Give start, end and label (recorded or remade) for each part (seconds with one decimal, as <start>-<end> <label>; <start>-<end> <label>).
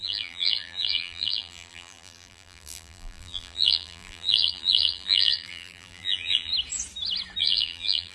0.0-6.5 remade; 6.5-7.4 recorded; 7.4-8.1 remade